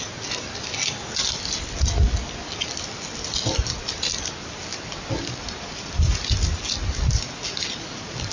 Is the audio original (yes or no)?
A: yes